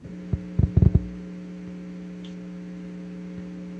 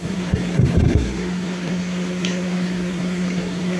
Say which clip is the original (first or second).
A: first